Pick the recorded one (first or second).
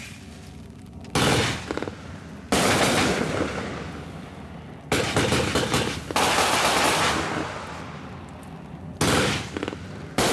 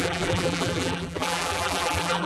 first